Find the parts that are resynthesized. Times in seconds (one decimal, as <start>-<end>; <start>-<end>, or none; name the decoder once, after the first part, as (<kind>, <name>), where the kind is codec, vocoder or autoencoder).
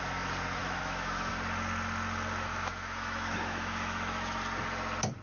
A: 0.6-1.3 (autoencoder, DAC-VAE); 2.5-4.4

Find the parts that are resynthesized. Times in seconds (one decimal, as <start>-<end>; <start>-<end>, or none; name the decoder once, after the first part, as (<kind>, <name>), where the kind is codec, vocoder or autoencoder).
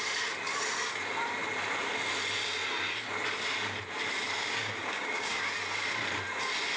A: 4.6-5.4 (codec, DAC)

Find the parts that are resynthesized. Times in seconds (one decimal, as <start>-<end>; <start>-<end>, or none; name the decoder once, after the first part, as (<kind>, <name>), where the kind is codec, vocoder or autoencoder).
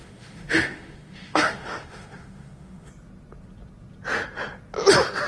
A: 0.0-2.9 (autoencoder, DAC-VAE)